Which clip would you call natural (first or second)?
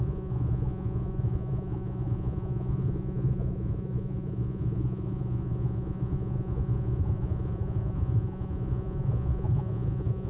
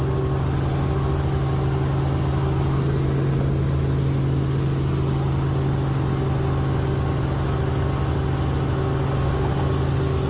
second